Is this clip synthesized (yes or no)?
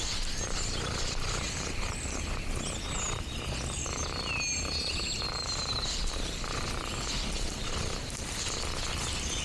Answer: no